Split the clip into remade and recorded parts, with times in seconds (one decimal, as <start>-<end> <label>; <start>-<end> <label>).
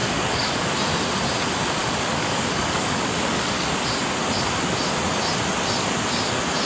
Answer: 0.0-0.7 remade; 0.7-1.8 recorded; 1.8-3.7 remade; 3.7-6.6 recorded